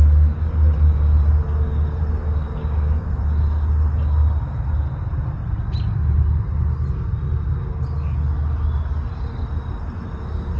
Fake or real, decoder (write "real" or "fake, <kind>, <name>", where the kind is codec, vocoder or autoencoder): real